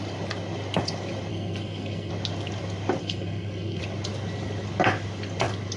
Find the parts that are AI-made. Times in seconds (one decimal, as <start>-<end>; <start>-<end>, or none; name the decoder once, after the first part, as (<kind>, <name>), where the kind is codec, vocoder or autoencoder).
1.3-2.1 (codec, SNAC); 3.0-3.8